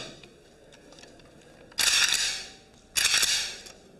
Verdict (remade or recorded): recorded